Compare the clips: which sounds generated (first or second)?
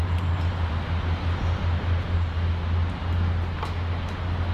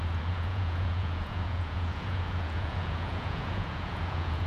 second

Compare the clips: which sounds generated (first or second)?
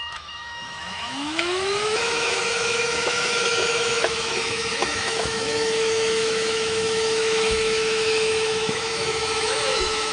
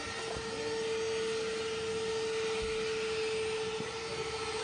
first